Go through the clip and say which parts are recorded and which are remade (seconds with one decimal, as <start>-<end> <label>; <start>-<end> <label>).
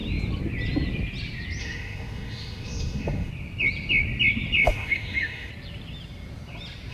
0.0-1.6 recorded; 1.6-3.3 remade; 3.3-4.6 recorded; 4.6-5.5 remade; 5.5-6.9 recorded